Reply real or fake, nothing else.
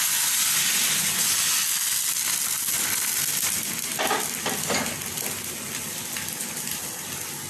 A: real